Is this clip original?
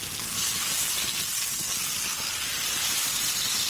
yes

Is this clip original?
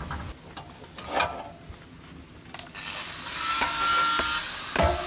yes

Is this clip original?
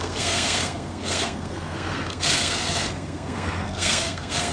no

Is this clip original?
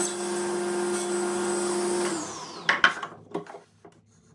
yes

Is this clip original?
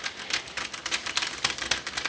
yes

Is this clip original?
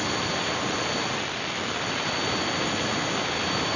yes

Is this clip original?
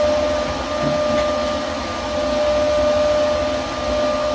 yes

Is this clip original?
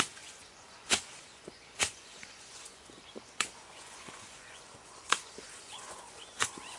no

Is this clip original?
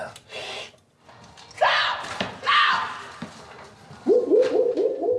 yes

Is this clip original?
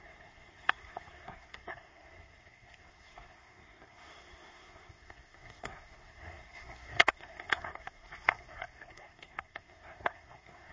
no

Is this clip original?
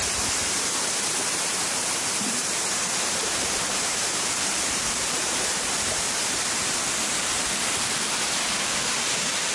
no